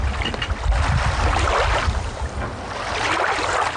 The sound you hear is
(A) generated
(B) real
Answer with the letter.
B